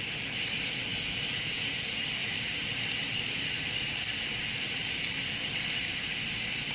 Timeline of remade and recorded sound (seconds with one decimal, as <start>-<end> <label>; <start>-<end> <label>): 0.0-2.2 recorded; 2.2-3.5 remade; 3.5-6.7 recorded

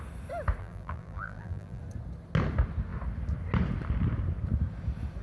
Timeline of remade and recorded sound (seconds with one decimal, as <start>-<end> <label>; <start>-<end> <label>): 0.0-0.6 recorded; 0.6-1.8 remade; 1.8-5.2 recorded

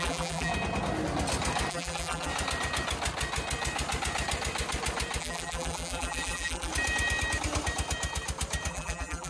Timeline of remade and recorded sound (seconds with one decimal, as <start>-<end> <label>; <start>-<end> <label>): 0.0-0.5 remade; 0.5-1.7 recorded; 1.7-2.3 remade; 2.3-5.2 recorded; 5.2-6.7 remade; 6.7-8.7 recorded; 8.7-9.3 remade

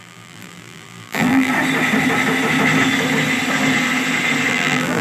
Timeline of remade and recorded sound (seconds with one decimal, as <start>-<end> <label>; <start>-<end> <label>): 0.0-1.5 remade; 1.5-4.5 recorded; 4.5-5.0 remade

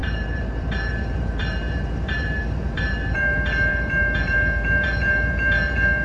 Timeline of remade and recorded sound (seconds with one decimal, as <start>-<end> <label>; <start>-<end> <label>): 0.0-6.0 remade

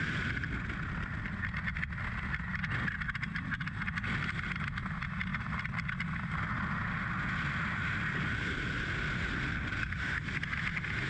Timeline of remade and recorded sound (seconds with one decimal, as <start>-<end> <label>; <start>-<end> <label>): 0.0-11.1 recorded

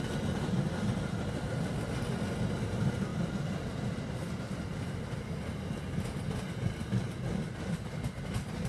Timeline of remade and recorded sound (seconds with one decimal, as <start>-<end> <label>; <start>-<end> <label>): 0.0-8.7 recorded

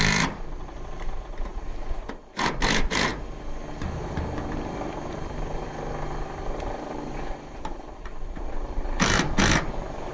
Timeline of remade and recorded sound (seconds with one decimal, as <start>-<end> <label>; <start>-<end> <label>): 0.0-3.1 remade; 3.1-6.2 recorded; 6.2-10.1 remade